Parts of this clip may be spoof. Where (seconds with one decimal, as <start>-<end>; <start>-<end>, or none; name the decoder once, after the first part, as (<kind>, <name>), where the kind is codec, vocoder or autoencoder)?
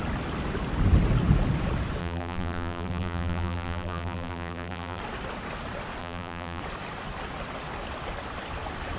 2.0-5.0 (vocoder, BigVGAN v2); 6.0-6.6